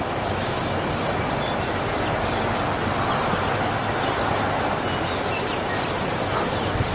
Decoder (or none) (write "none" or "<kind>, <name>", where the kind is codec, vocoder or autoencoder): none